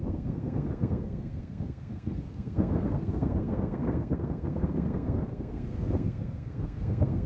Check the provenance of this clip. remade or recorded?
remade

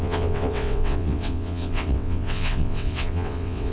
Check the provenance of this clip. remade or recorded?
remade